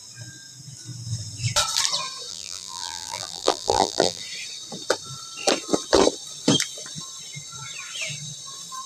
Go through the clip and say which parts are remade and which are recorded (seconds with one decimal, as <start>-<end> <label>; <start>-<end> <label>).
0.0-2.3 recorded; 2.3-4.2 remade; 4.2-8.9 recorded